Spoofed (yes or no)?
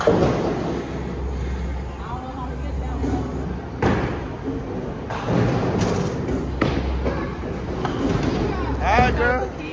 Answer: no